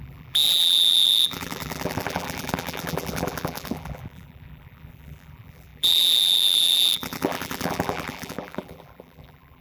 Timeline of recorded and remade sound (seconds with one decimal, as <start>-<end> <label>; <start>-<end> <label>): 0.0-9.6 remade